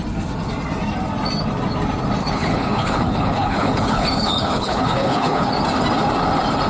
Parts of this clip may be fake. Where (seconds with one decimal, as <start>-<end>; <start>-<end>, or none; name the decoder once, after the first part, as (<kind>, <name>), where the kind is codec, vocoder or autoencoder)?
2.2-5.5 (codec, HILCodec)